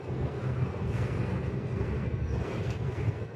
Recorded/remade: remade